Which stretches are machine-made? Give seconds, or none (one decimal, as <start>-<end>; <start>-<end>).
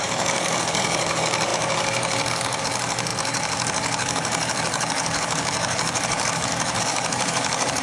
0.0-7.8